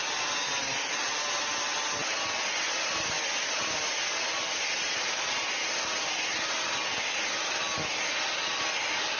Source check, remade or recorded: recorded